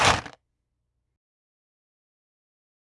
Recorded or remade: recorded